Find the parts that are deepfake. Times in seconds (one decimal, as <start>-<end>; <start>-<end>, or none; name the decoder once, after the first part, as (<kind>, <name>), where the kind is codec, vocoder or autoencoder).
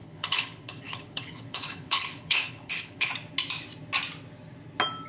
0.0-3.1 (codec, HILCodec)